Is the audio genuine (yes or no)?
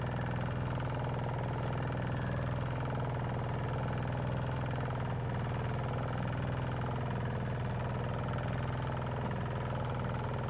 yes